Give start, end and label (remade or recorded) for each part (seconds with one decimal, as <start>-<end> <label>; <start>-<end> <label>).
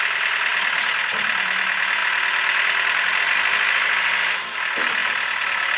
0.0-0.5 recorded; 0.5-1.4 remade; 1.4-2.0 recorded; 2.0-3.2 remade; 3.2-5.0 recorded; 5.0-5.8 remade